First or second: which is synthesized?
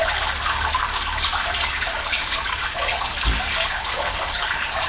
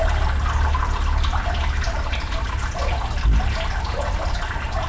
first